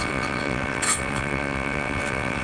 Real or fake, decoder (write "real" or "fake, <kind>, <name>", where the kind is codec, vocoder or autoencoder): fake, vocoder, WaveNeXt